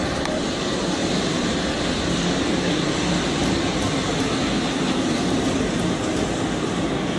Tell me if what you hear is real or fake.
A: real